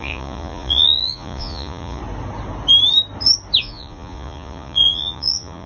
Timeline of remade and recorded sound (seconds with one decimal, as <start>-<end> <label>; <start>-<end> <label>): 0.0-2.0 remade; 2.0-3.6 recorded; 3.6-5.7 remade